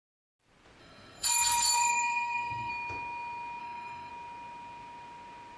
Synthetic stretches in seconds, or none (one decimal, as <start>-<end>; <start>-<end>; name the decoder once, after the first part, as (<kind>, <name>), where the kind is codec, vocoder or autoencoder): 0.8-2.7 (codec, SNAC); 3.6-4.1